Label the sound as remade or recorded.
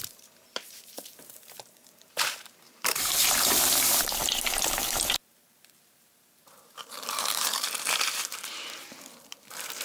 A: remade